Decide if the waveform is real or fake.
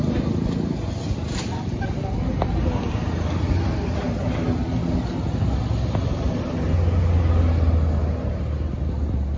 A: real